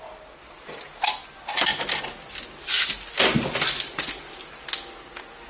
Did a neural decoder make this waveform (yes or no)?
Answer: no